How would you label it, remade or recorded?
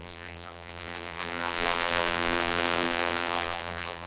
remade